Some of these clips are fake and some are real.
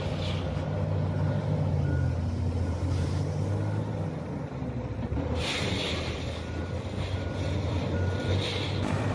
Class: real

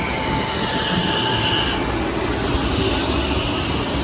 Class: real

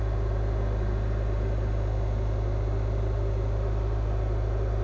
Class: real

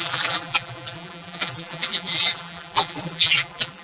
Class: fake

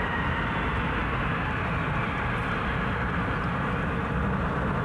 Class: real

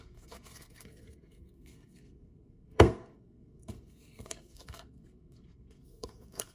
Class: fake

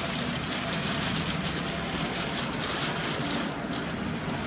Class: fake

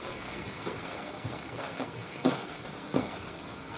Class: fake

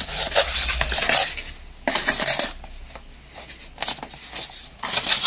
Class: real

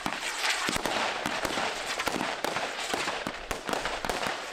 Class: fake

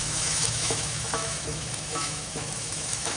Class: fake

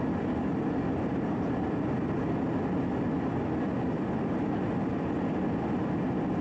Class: real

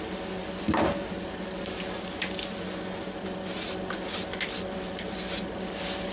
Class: real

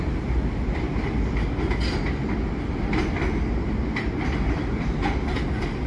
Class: real